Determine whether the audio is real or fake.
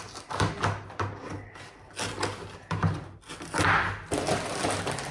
real